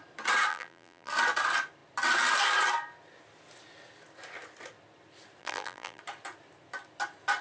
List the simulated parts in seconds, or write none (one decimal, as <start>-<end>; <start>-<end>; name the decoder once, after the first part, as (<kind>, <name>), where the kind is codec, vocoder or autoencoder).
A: 0.5-1.1 (vocoder, BigVGAN v2); 5.4-6.0